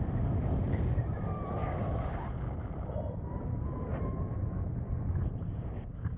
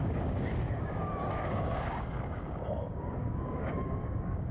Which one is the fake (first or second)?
second